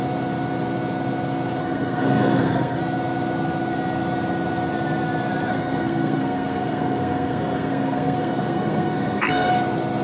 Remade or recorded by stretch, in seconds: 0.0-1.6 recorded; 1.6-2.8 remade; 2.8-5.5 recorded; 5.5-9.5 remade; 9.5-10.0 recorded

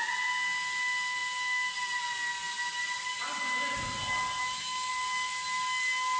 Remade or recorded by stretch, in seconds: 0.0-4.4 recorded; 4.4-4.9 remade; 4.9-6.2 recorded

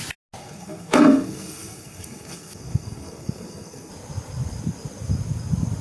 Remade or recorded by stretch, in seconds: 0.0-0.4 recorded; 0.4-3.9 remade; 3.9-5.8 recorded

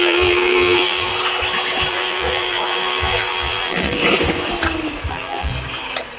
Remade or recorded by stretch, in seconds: 0.0-1.1 remade; 1.1-1.9 recorded; 1.9-4.0 remade; 4.0-5.1 recorded; 5.1-5.5 remade; 5.5-6.2 recorded

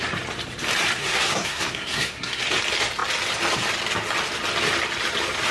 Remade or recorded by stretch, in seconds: 0.0-1.0 recorded; 1.0-2.4 remade; 2.4-5.5 recorded

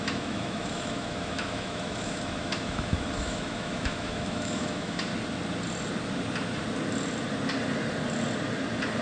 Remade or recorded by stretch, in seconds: 0.0-5.1 remade; 5.1-9.0 recorded

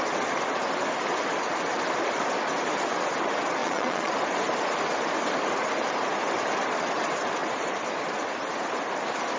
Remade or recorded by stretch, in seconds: 0.0-3.6 recorded; 3.6-4.1 remade; 4.1-9.4 recorded

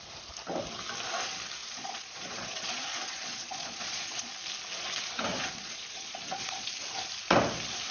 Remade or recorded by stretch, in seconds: 0.0-1.6 recorded; 1.6-4.3 remade; 4.3-5.3 recorded; 5.3-6.7 remade; 6.7-7.9 recorded